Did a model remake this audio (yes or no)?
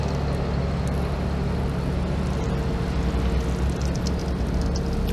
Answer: no